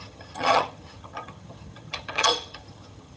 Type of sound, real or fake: fake